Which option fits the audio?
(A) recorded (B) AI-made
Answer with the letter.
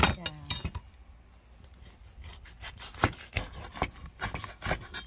A